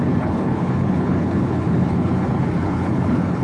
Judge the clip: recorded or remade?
remade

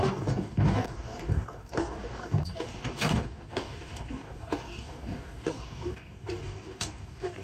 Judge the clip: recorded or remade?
remade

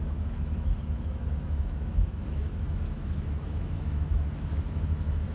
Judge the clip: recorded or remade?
remade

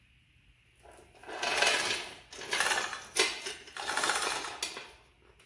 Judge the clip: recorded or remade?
recorded